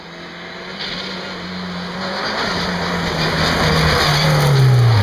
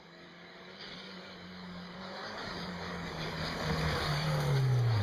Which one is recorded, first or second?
first